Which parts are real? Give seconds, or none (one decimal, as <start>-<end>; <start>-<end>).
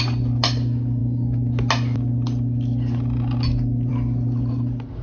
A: 0.0-5.0